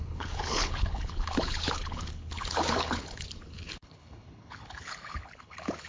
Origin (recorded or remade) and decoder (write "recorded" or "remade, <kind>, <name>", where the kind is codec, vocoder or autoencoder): remade, codec, HILCodec